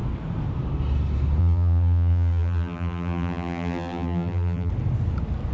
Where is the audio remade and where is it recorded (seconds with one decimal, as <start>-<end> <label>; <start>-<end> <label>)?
0.0-1.4 recorded; 1.4-4.7 remade; 4.7-5.5 recorded